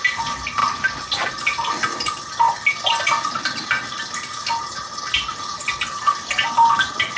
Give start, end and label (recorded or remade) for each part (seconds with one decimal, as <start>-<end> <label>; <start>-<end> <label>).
0.0-7.2 recorded